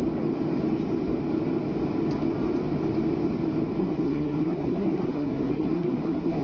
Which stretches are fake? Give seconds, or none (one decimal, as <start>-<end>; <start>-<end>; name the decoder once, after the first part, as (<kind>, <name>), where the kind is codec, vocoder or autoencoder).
3.8-6.4 (codec, SNAC)